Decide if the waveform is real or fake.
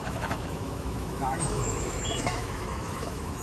fake